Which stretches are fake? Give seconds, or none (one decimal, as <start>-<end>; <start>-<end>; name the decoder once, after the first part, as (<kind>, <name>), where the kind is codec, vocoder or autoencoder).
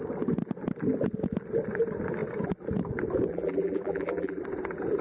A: 3.3-4.4 (vocoder, BigVGAN v2)